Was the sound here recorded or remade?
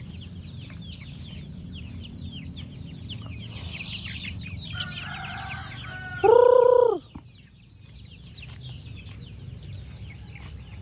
recorded